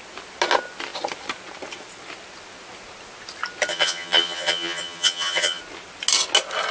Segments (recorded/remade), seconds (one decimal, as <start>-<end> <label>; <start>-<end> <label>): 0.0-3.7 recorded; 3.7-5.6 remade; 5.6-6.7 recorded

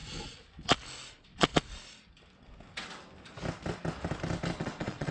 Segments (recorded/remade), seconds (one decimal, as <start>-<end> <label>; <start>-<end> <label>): 0.0-1.1 recorded; 1.1-1.5 remade; 1.5-4.6 recorded; 4.6-5.1 remade

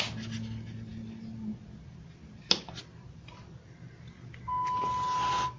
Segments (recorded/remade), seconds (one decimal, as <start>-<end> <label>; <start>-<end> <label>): 0.0-5.6 recorded

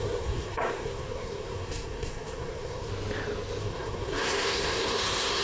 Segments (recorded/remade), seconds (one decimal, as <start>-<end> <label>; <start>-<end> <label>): 0.0-2.9 remade; 2.9-3.6 recorded; 3.6-5.4 remade

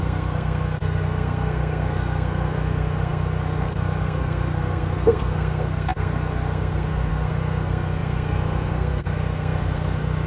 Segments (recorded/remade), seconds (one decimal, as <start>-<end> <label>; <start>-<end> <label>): 0.0-10.3 remade

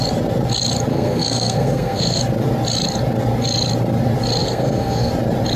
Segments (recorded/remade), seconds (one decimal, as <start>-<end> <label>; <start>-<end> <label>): 0.0-0.9 recorded; 0.9-2.2 remade; 2.2-4.4 recorded; 4.4-5.1 remade; 5.1-5.6 recorded